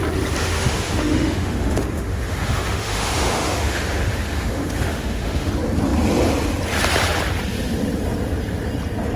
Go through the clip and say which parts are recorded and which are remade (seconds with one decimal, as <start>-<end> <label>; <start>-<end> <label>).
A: 0.0-0.4 recorded; 0.4-5.5 remade; 5.5-9.2 recorded